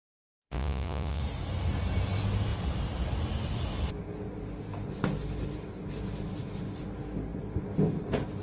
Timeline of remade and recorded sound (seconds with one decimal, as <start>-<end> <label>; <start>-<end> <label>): 0.0-1.2 remade; 1.2-8.4 recorded

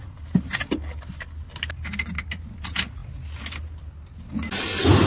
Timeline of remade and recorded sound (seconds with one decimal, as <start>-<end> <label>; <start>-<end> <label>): 0.0-5.1 recorded